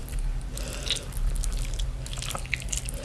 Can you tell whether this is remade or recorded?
recorded